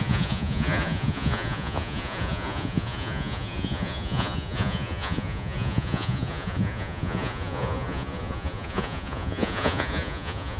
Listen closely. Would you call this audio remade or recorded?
remade